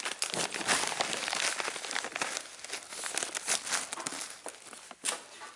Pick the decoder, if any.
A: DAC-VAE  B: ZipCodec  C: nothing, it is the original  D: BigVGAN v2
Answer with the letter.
C